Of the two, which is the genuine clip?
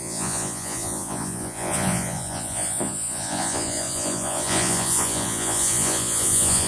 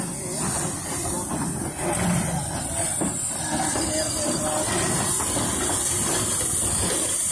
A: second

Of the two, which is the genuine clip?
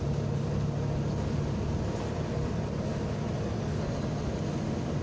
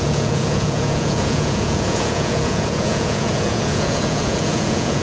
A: first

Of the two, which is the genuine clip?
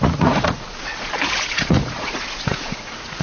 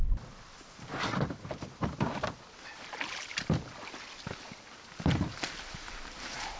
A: second